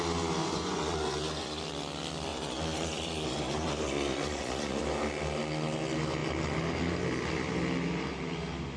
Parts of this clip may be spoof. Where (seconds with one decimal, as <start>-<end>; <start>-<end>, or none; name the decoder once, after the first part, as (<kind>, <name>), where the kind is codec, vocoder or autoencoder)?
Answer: 0.4-1.6 (vocoder, Vocos); 2.3-4.8